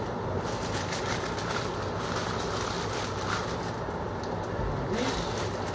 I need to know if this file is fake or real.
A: real